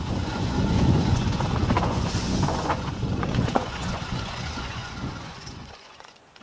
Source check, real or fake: fake